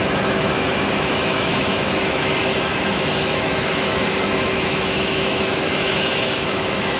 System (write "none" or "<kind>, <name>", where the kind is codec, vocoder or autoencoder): autoencoder, DAC-VAE